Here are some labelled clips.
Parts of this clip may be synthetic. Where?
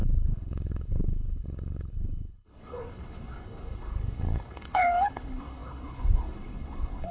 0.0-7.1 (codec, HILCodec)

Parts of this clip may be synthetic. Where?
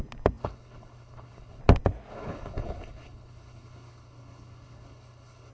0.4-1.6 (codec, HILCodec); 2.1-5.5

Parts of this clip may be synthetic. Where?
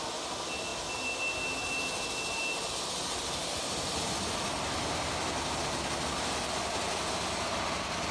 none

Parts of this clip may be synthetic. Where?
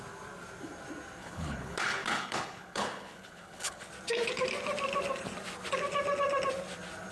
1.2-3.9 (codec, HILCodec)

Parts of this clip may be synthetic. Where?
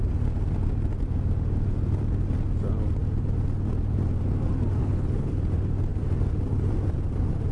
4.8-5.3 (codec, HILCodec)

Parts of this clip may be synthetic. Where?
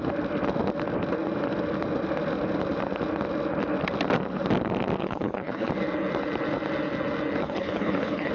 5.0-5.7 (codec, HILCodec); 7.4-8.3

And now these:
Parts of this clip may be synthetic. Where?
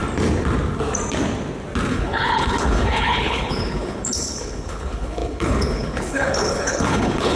1.9-7.4 (codec, HILCodec)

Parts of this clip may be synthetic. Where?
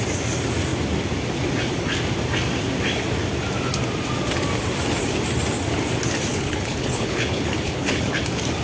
6.3-8.2 (codec, HILCodec)